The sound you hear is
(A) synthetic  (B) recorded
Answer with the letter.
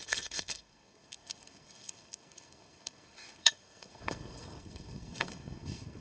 A